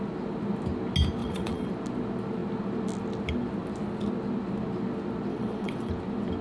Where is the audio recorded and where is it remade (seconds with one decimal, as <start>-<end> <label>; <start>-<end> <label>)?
0.0-1.2 recorded; 1.2-1.7 remade; 1.7-5.3 recorded; 5.3-5.9 remade; 5.9-6.4 recorded